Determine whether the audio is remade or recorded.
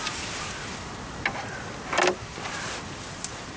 recorded